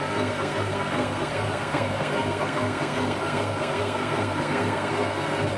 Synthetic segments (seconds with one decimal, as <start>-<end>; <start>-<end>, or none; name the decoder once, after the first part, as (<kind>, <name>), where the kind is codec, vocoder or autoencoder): 0.0-5.6 (codec, SNAC)